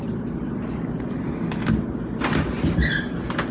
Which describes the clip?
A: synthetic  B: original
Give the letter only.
B